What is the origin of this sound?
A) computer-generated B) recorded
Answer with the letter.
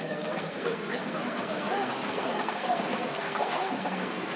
A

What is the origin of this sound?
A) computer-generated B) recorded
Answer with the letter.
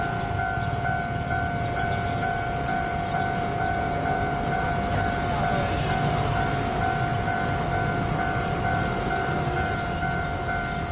B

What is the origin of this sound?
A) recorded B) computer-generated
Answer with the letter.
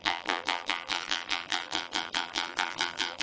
B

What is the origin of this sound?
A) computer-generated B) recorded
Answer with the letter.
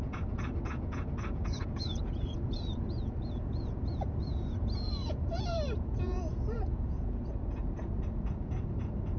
A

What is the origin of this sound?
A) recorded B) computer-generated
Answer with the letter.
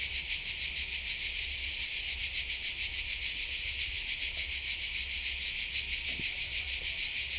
A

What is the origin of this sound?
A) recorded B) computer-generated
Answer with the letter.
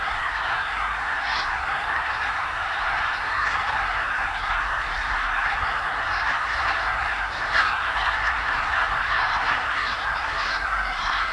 B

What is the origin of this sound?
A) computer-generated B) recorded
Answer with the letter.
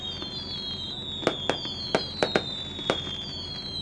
B